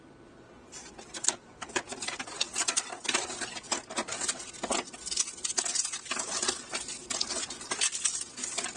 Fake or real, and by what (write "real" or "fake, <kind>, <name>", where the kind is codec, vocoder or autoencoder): real